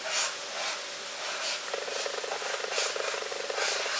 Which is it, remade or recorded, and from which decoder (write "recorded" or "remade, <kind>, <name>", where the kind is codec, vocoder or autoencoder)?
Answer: recorded